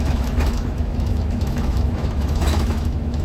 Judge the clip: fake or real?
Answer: fake